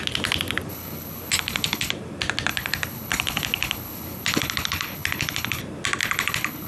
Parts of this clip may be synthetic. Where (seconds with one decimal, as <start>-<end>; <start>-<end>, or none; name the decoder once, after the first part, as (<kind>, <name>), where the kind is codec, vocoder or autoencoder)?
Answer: 0.7-1.9 (codec, HILCodec); 2.5-5.6; 6.0-6.7